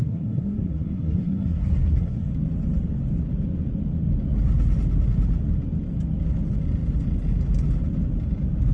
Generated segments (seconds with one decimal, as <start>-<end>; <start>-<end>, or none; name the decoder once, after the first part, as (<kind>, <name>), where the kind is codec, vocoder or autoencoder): 0.0-2.3 (codec, SNAC)